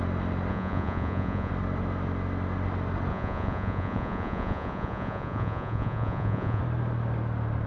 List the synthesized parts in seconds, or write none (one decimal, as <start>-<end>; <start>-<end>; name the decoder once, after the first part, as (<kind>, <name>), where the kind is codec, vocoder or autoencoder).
0.5-1.5 (vocoder, Vocos); 3.1-6.6